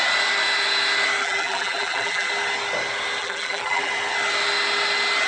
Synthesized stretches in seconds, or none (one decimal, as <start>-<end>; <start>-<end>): 1.2-2.3; 3.2-3.9

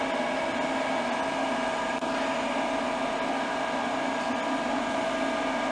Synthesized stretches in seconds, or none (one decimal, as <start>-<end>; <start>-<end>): none

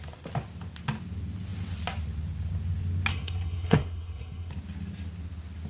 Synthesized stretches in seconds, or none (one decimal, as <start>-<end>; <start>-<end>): 3.1-4.5

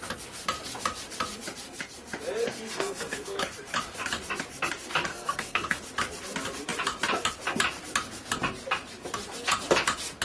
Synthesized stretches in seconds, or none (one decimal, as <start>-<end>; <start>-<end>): 2.4-3.4; 5.1-5.8

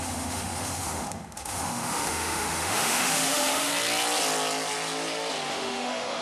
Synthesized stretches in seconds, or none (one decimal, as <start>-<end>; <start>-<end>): 0.0-3.7; 5.5-6.2

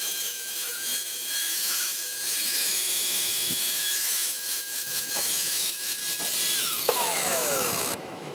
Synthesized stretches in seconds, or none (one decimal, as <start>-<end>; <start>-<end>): 0.0-6.0; 6.6-8.3